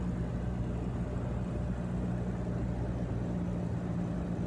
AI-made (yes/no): no